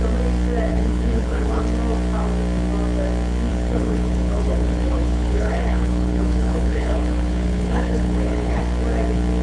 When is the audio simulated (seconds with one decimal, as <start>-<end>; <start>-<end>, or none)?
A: 0.7-1.6; 3.5-8.6